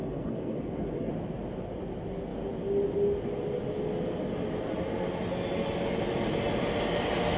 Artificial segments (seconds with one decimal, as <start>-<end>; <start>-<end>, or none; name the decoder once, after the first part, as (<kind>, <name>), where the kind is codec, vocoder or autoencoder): 0.0-1.1 (codec, SNAC)